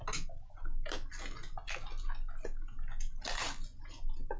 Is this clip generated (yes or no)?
no